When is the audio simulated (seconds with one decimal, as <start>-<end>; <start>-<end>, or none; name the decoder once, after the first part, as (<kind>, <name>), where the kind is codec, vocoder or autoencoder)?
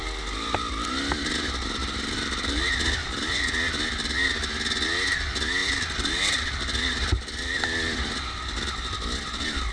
1.8-3.7 (vocoder, BigVGAN v2); 5.6-6.5